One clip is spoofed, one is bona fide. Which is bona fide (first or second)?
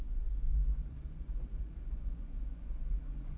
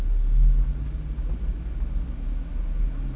second